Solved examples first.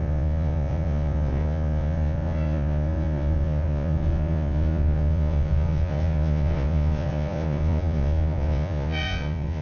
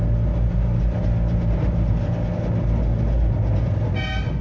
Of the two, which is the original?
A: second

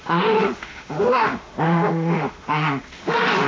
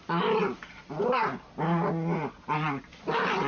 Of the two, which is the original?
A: second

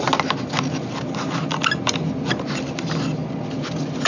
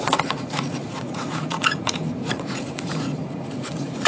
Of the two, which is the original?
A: first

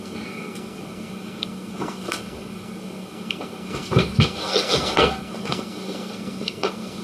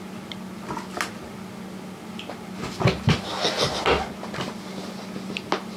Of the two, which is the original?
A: second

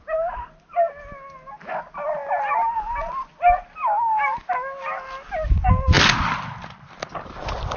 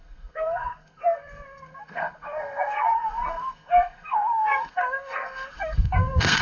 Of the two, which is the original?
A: first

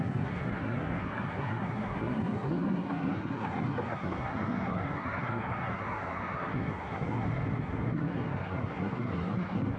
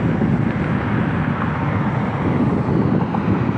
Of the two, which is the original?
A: second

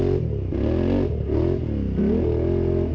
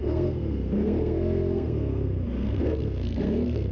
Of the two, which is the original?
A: first